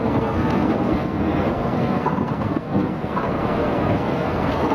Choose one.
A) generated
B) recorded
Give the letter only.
A